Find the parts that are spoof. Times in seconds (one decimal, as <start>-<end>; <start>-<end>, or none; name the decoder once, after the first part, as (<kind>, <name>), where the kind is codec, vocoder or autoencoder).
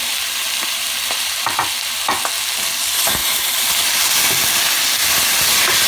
none